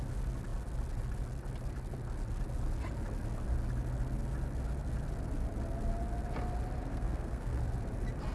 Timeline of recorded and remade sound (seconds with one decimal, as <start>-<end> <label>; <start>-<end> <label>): 0.0-6.9 recorded; 6.9-7.6 remade; 7.6-8.3 recorded